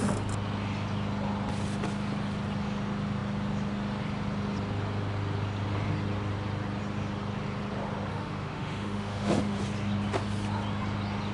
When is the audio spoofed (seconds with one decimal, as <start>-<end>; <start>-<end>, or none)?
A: 8.1-9.6